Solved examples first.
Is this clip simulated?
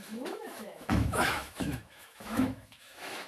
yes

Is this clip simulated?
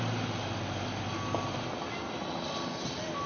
no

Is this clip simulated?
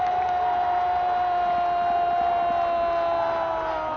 no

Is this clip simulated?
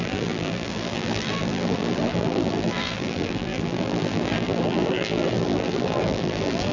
yes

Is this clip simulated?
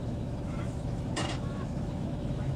yes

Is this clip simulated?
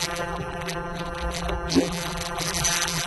yes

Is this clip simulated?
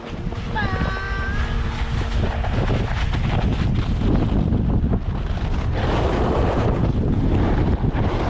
no